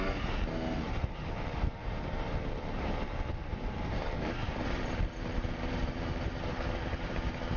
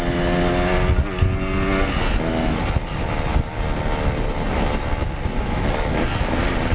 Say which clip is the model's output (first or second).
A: first